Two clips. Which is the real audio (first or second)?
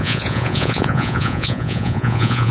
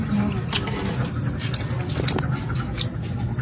second